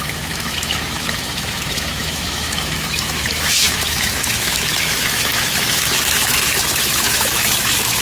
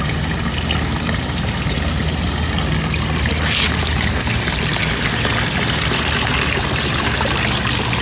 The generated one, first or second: first